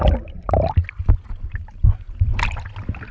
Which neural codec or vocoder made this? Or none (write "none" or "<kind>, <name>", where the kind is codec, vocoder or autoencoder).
none